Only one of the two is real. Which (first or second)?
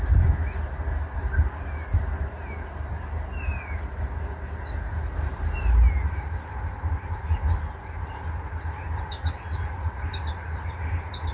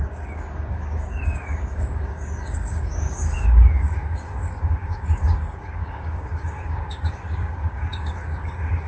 first